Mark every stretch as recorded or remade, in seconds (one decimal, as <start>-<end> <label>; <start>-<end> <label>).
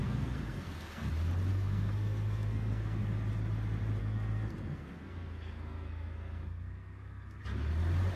0.0-1.1 remade; 1.1-1.5 recorded; 1.5-3.0 remade; 3.0-4.0 recorded; 4.0-7.4 remade; 7.4-8.2 recorded